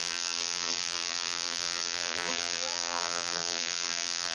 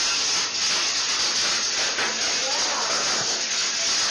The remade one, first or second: first